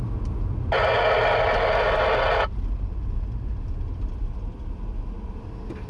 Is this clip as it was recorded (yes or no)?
yes